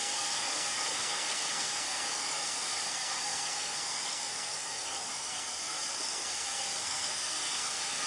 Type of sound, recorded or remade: remade